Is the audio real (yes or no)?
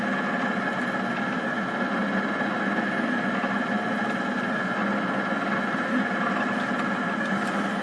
yes